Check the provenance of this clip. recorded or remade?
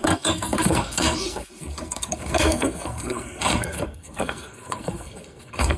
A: remade